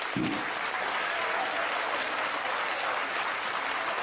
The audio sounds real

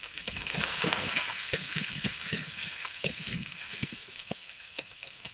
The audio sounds fake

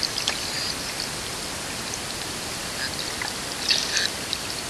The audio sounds real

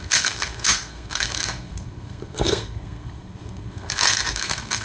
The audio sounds fake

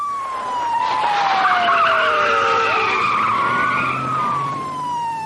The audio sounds real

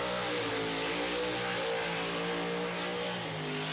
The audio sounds real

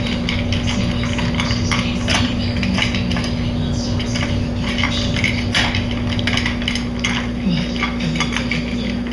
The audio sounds real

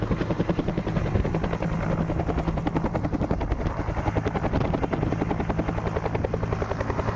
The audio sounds real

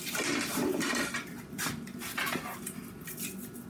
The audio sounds fake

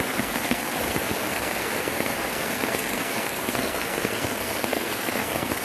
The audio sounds fake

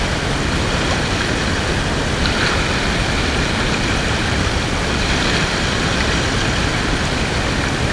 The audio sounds fake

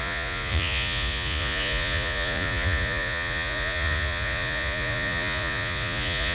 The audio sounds fake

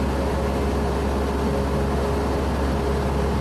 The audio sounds real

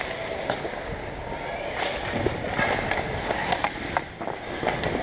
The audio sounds real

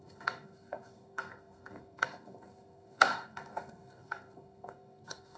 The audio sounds fake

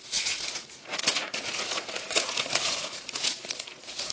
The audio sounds fake